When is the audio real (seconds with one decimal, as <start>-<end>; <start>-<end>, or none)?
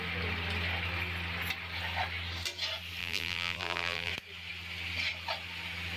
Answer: 0.0-3.0; 4.1-6.0